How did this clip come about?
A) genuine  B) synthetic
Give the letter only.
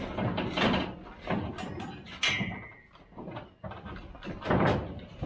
A